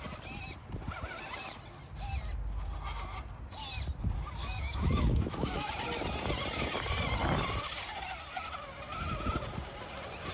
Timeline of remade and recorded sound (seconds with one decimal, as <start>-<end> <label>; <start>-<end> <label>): 0.0-4.4 recorded; 4.4-5.7 remade; 5.7-10.3 recorded